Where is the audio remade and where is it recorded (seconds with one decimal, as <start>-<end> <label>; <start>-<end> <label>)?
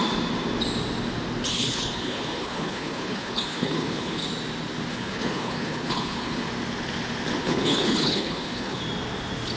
0.0-1.5 recorded; 1.5-4.2 remade; 4.2-4.9 recorded; 4.9-6.5 remade; 6.5-7.4 recorded; 7.4-8.8 remade; 8.8-9.6 recorded